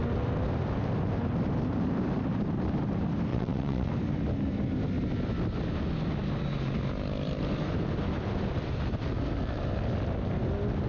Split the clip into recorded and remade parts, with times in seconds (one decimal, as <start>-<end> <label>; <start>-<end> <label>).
0.0-3.3 recorded; 3.3-3.9 remade; 3.9-10.9 recorded